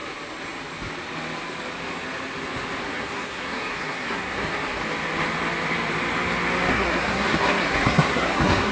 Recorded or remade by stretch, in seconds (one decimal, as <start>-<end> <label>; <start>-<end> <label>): 0.0-2.8 recorded; 2.8-4.8 remade; 4.8-6.7 recorded; 6.7-8.7 remade